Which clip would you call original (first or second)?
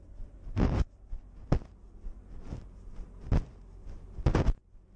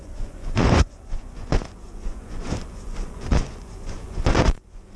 first